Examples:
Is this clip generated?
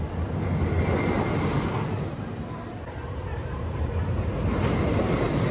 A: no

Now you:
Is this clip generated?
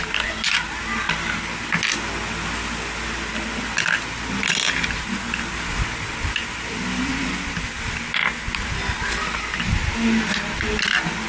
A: no